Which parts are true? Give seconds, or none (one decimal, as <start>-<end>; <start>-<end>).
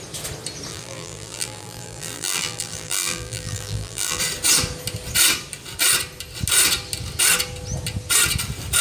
0.0-0.7; 4.2-8.8